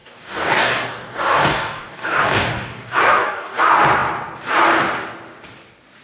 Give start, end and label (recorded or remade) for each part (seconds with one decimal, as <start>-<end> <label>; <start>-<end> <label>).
0.0-3.6 remade; 3.6-6.0 recorded